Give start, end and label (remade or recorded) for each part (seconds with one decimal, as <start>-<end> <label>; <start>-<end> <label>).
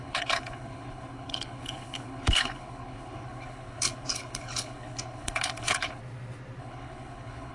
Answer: 0.0-6.0 remade; 6.0-6.6 recorded; 6.6-7.5 remade